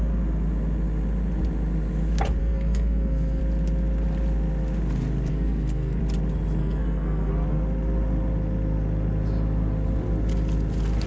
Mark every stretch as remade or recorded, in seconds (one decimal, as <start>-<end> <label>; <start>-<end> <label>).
0.0-2.4 recorded; 2.4-3.4 remade; 3.4-5.3 recorded; 5.3-6.0 remade; 6.0-6.6 recorded; 6.6-7.3 remade; 7.3-11.1 recorded